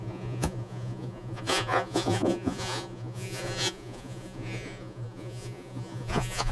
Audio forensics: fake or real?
fake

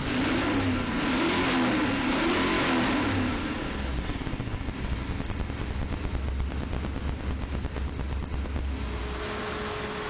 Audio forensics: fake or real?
real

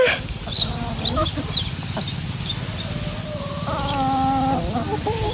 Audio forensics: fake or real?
real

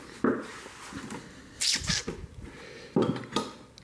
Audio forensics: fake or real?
real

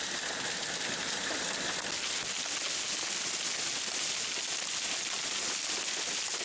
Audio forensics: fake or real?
real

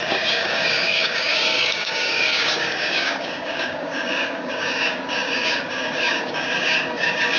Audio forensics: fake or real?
fake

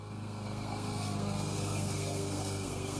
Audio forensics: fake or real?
fake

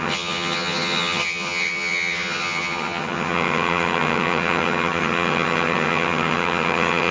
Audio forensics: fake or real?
fake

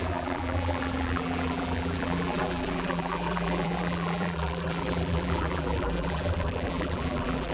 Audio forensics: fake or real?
fake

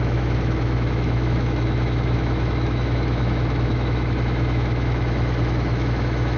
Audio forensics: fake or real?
fake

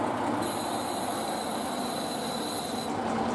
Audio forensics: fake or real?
real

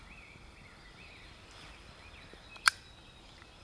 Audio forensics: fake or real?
fake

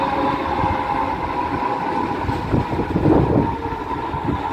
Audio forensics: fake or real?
real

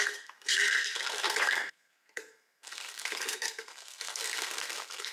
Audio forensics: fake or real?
fake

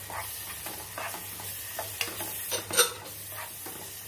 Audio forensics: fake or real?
real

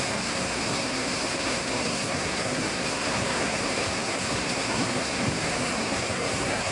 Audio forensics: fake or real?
fake